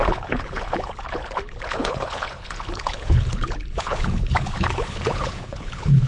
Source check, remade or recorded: remade